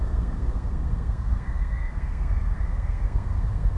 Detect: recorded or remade remade